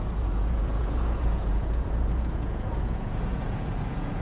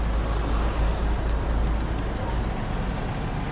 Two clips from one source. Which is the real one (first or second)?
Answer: second